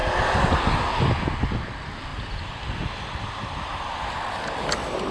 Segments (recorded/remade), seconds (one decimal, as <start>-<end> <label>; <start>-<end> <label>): 0.0-0.6 remade; 0.6-2.1 recorded; 2.1-4.2 remade; 4.2-5.1 recorded